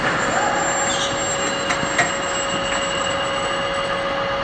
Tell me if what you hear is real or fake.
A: real